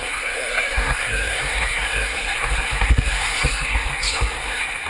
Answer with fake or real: fake